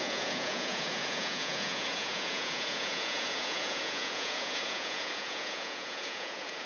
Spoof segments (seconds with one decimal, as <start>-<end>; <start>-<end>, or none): 0.0-6.7

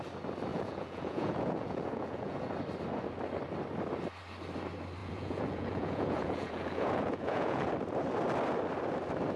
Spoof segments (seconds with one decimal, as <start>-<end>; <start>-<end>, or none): 0.5-2.5; 5.0-7.7

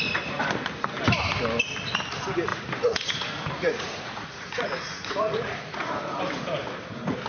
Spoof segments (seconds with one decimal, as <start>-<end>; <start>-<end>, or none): 2.5-6.2

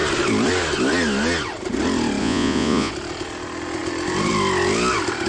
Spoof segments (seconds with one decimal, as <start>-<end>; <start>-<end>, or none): 2.2-2.9

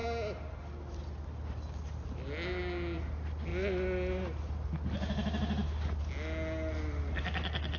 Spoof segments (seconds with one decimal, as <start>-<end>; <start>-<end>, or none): none

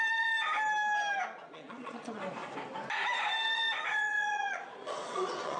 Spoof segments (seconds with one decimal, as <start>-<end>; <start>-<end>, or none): 1.4-2.2; 3.9-5.6

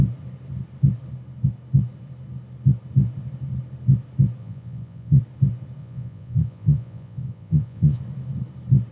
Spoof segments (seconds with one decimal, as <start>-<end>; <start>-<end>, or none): 4.4-5.2; 5.8-8.0